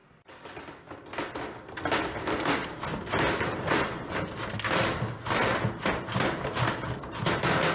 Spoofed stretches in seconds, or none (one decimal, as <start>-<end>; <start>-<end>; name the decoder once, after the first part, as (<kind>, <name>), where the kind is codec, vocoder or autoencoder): none